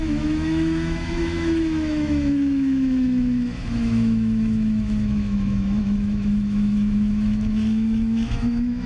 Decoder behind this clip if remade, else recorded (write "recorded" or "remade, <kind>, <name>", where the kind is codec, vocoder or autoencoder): remade, autoencoder, DAC-VAE